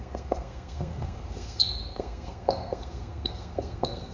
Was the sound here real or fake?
fake